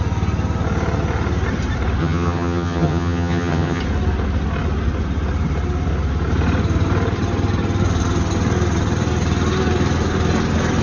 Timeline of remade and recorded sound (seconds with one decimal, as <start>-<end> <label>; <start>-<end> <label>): 0.0-2.0 recorded; 2.0-3.8 remade; 3.8-10.8 recorded